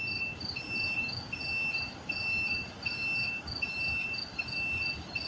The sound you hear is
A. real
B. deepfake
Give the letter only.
A